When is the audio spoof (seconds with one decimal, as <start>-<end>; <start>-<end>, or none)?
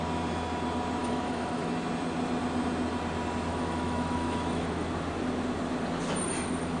1.0-1.7; 3.5-4.9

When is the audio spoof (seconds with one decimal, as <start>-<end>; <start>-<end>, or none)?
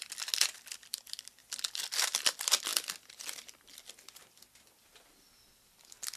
none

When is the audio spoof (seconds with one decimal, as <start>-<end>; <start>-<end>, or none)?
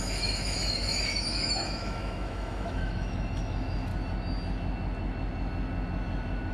0.0-3.9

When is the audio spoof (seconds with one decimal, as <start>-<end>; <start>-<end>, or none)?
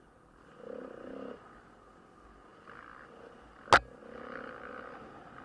none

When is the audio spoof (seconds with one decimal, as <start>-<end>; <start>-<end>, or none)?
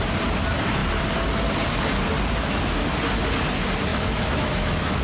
3.9-5.0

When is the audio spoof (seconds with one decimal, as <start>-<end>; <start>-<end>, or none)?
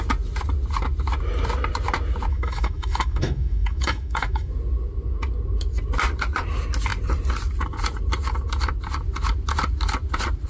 2.3-4.5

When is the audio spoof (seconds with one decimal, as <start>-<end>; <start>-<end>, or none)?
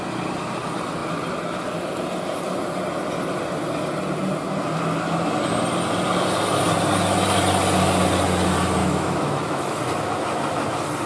8.8-9.8